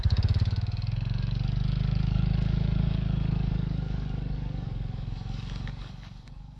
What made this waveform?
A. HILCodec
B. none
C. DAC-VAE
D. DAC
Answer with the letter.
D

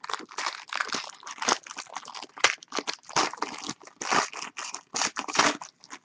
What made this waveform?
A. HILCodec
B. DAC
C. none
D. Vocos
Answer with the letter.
C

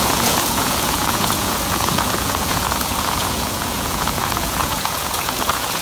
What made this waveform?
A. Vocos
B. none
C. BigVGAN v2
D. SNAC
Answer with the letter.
A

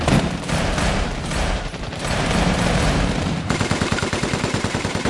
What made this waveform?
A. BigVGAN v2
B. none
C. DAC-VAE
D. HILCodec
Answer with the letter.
A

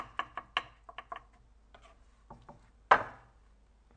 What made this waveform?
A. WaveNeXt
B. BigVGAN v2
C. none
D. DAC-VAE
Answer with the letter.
C